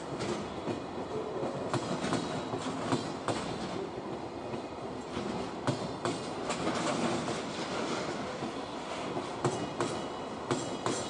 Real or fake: real